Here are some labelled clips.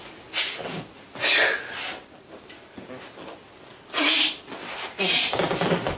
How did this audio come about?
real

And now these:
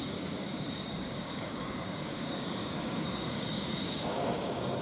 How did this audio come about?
fake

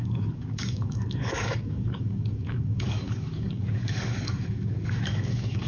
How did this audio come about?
fake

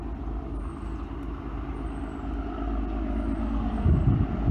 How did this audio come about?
real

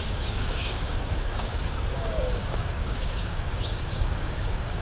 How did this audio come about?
fake